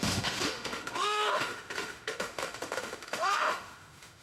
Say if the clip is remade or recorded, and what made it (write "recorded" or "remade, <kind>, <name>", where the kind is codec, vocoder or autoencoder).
remade, autoencoder, DAC-VAE